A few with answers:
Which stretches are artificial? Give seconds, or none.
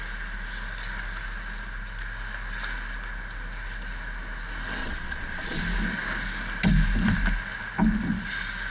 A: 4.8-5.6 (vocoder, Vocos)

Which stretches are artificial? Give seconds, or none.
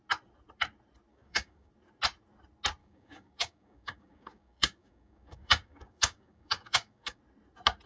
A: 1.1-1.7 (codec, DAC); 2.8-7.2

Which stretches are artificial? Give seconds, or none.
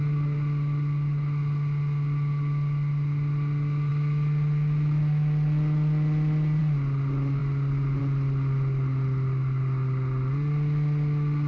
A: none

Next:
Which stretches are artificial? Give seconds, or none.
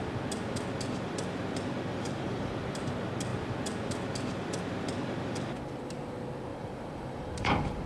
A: 1.9-2.5 (vocoder, BigVGAN v2); 6.5-7.9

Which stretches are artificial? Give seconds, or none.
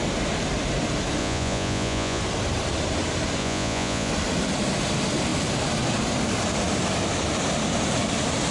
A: 1.2-2.2 (vocoder, Vocos); 3.4-4.1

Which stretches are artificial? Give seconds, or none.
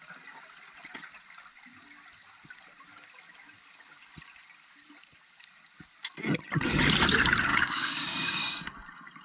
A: 7.5-8.4 (codec, DAC)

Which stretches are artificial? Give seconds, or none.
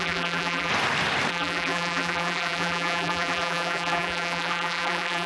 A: 0.0-0.7 (vocoder, BigVGAN v2); 1.3-5.3